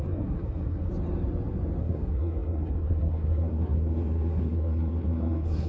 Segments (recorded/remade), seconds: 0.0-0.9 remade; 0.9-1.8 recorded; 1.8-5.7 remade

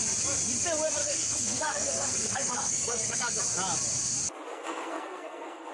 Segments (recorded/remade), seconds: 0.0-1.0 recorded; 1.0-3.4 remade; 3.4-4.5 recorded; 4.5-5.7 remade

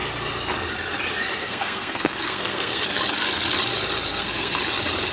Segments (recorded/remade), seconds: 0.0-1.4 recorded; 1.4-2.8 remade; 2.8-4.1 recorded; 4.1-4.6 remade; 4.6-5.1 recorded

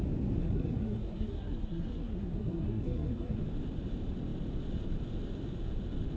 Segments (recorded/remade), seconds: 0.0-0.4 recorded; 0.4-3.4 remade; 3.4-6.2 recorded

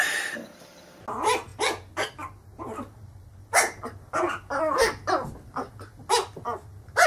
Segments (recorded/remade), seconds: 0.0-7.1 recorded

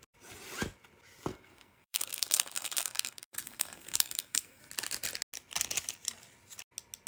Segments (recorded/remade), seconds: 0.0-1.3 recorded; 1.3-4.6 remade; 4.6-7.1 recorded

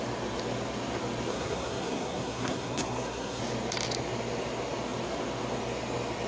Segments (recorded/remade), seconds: 0.0-1.3 recorded; 1.3-3.4 remade; 3.4-6.3 recorded